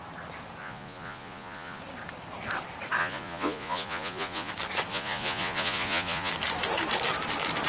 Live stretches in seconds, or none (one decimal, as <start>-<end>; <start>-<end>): 0.0-0.6; 1.8-3.0; 4.5-4.9; 6.3-7.7